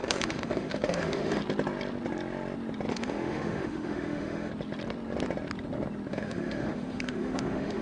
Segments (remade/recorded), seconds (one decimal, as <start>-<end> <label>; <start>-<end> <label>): 0.0-1.4 remade; 1.4-2.9 recorded; 2.9-4.5 remade; 4.5-6.1 recorded; 6.1-7.8 remade